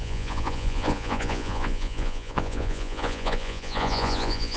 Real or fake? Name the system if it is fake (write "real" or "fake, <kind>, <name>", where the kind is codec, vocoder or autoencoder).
fake, vocoder, Vocos